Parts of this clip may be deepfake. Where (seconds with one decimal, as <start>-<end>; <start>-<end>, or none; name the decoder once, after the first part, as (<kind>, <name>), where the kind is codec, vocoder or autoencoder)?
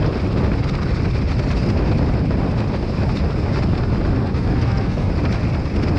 4.2-5.1 (codec, SNAC)